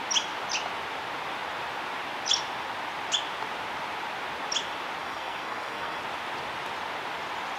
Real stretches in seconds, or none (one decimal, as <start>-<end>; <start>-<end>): 0.0-5.0; 6.0-7.6